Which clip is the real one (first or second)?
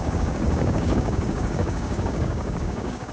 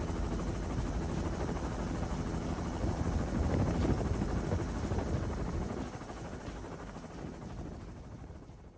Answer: second